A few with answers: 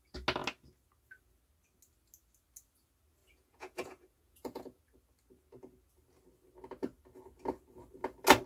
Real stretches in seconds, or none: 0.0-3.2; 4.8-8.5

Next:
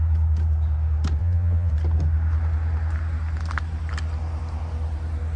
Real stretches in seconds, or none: 0.0-1.2; 1.7-5.4

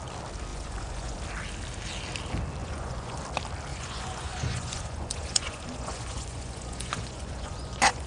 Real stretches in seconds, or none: 0.0-0.5; 1.2-2.6; 3.2-3.7

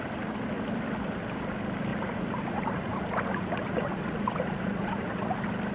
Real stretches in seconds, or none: 0.0-1.9; 5.3-5.7